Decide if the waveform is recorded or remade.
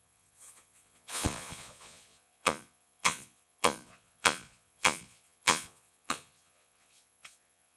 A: remade